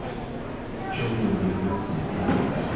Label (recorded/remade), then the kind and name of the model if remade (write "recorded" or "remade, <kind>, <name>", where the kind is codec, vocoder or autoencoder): recorded